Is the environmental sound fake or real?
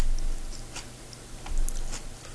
real